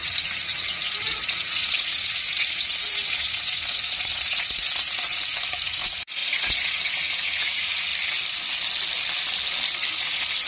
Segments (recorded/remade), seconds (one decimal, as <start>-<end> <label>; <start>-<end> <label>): 0.0-7.9 remade; 7.9-9.9 recorded; 9.9-10.5 remade